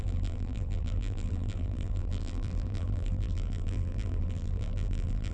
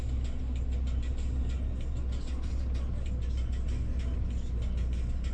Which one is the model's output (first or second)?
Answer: first